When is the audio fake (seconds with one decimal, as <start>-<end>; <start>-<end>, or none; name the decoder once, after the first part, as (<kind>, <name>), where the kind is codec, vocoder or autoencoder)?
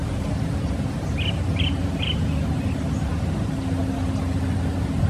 none